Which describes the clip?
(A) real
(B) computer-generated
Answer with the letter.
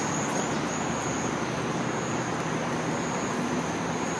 A